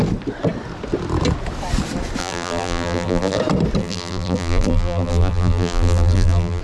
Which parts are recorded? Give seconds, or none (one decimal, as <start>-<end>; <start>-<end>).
0.0-2.2; 3.4-3.8